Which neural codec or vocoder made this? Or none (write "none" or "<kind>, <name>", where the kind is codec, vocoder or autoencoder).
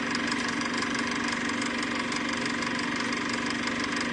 none